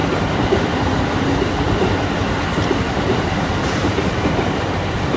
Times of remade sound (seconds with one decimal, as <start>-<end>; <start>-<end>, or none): 0.0-5.2

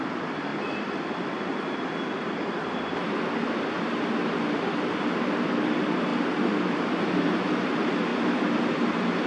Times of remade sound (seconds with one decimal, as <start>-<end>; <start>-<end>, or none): 0.5-3.1; 8.1-9.3